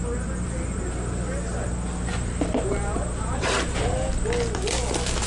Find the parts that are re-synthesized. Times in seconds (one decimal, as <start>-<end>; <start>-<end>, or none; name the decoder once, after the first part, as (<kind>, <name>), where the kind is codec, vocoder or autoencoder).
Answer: 2.1-3.5 (vocoder, BigVGAN v2)